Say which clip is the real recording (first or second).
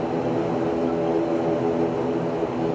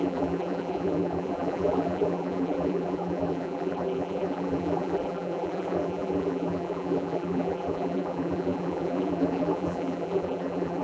first